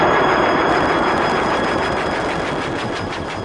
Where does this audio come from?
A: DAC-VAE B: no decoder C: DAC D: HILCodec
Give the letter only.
B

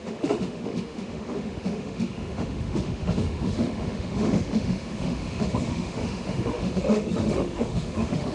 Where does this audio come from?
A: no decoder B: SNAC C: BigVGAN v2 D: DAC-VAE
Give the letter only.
D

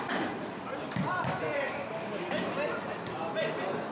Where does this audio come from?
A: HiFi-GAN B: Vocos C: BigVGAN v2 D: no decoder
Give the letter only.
D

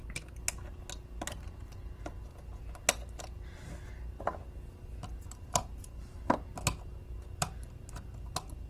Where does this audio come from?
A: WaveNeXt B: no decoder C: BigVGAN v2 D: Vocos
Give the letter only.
B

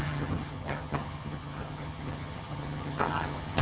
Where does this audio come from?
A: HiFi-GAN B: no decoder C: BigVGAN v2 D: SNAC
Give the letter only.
A